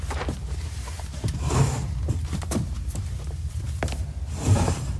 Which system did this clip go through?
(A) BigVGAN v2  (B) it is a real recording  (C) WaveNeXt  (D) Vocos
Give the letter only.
A